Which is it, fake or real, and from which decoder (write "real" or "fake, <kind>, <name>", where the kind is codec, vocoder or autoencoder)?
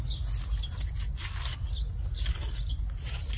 real